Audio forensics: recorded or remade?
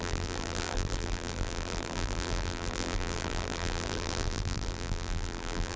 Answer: remade